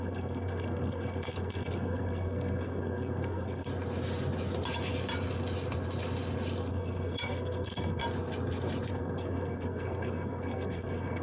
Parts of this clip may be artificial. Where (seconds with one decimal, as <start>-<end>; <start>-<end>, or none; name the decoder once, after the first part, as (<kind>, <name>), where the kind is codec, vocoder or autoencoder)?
0.0-3.7 (codec, SNAC); 6.7-8.0; 8.9-11.2

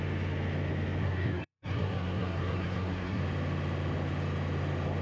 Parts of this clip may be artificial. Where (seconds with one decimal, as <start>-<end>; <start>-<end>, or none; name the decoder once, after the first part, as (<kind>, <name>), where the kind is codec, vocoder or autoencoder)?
1.0-3.2 (codec, SNAC)

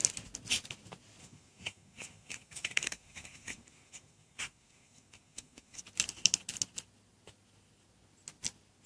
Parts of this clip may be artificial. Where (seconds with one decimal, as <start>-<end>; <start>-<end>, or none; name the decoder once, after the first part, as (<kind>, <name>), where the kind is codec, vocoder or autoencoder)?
1.2-5.8 (codec, SNAC)

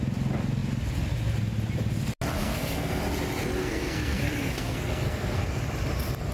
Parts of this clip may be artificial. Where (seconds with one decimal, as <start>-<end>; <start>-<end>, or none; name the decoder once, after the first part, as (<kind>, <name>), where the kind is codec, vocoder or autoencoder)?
2.4-3.0 (codec, SNAC); 3.6-5.6

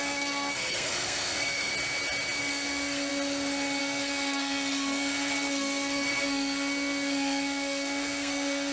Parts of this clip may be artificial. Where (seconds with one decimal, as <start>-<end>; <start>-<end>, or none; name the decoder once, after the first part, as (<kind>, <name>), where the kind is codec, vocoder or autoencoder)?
0.0-1.7 (codec, SNAC); 2.4-3.1; 3.8-8.7

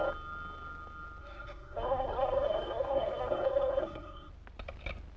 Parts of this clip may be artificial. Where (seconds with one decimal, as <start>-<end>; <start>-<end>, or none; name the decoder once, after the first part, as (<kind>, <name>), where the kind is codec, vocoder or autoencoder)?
1.2-4.3 (codec, SNAC)

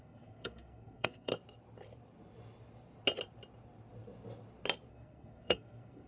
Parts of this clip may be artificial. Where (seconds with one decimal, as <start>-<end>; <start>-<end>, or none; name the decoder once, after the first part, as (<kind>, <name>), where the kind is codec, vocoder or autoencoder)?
0.0-1.3 (codec, SNAC); 4.9-6.1